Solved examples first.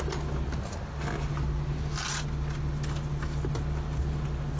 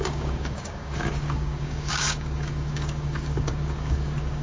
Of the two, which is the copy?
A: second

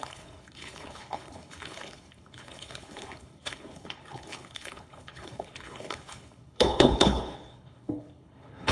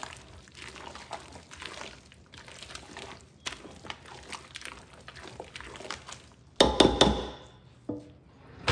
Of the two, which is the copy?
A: first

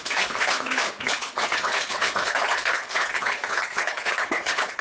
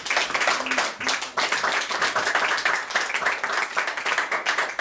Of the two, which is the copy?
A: first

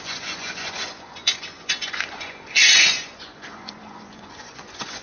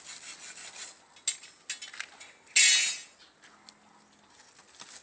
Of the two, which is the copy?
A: first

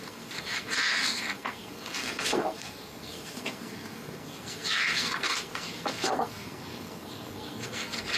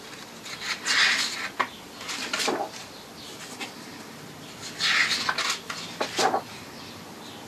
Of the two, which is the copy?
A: first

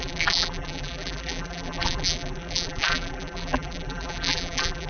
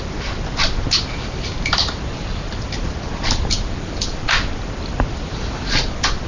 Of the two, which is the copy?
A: first